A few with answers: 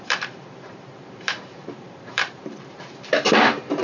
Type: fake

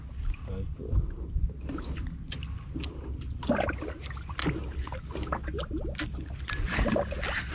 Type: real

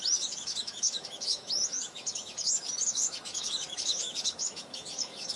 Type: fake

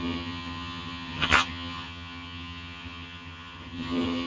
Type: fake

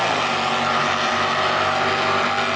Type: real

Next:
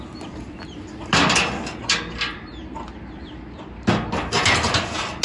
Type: real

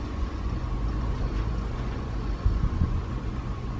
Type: fake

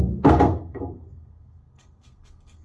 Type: fake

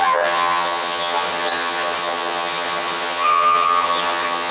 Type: fake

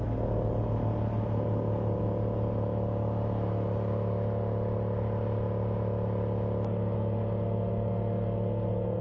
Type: real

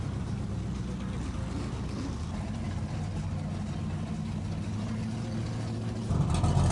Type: real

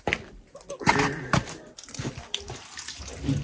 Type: real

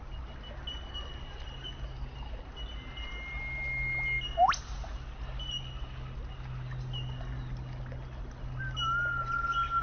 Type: real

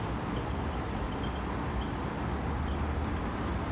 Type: real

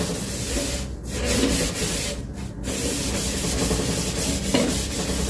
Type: real